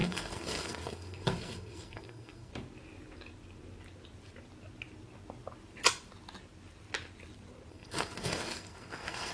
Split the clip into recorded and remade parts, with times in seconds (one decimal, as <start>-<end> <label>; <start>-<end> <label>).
0.0-2.5 remade; 2.5-7.7 recorded; 7.7-9.3 remade